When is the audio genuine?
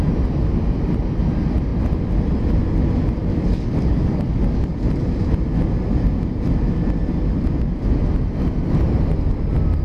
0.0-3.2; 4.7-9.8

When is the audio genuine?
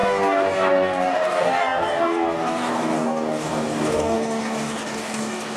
none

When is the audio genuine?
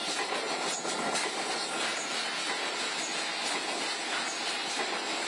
0.0-5.3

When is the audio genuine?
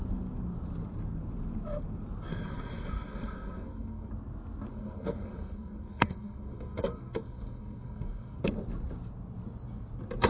0.0-2.3; 4.1-4.7; 8.4-10.3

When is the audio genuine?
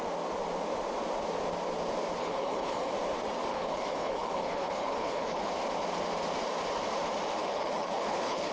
0.0-2.2; 2.9-3.5; 5.5-7.4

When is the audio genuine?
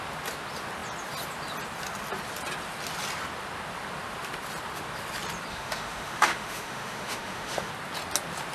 0.0-5.5; 7.7-8.5